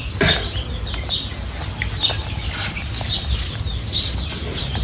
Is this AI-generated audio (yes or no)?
no